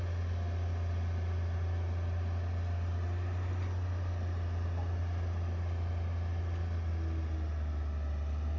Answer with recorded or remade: recorded